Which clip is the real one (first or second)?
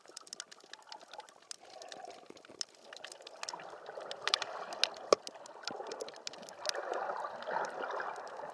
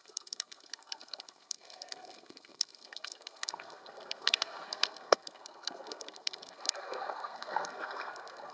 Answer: first